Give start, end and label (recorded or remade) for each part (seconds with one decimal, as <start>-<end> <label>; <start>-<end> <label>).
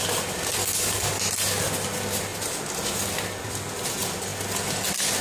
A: 0.0-0.6 recorded; 0.6-1.2 remade; 1.2-5.2 recorded